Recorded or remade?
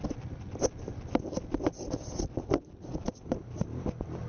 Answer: recorded